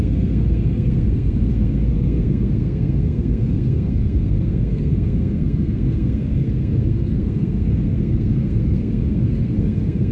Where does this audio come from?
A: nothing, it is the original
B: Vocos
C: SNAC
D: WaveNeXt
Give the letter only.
C